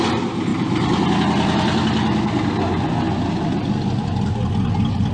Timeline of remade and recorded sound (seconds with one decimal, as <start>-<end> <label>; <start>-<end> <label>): 0.0-5.1 recorded